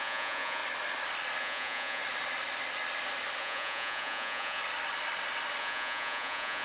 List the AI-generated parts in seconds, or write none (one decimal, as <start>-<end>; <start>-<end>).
0.0-0.6; 1.4-2.0; 3.4-4.6; 5.6-6.6